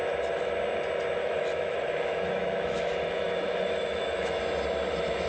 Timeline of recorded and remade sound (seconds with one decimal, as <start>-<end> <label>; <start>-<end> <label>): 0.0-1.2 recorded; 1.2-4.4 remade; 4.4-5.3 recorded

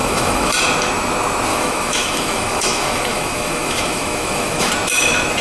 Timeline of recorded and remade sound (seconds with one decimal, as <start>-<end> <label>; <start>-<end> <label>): 0.0-0.5 remade; 0.5-1.5 recorded; 1.5-4.7 remade; 4.7-5.4 recorded

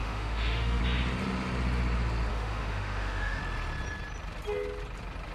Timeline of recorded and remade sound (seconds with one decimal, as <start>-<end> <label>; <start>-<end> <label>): 0.0-0.8 remade; 0.8-2.3 recorded; 2.3-3.4 remade; 3.4-5.3 recorded

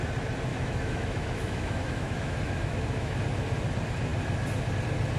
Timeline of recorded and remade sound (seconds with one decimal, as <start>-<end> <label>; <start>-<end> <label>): 0.0-0.5 recorded; 0.5-3.2 remade; 3.2-5.2 recorded